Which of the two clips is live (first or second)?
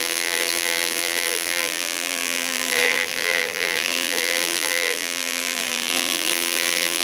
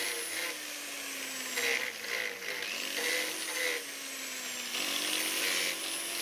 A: second